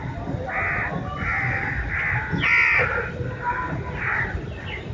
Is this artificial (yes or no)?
no